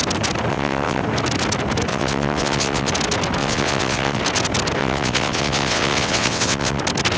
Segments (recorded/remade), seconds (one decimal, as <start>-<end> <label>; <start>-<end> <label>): 0.0-0.5 recorded; 0.5-1.0 remade; 1.0-1.9 recorded; 1.9-2.9 remade; 2.9-3.4 recorded; 3.4-4.2 remade; 4.2-4.8 recorded; 4.8-6.8 remade; 6.8-7.2 recorded